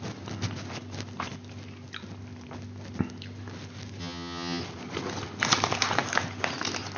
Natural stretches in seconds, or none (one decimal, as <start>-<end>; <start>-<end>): 0.0-4.0; 4.6-7.0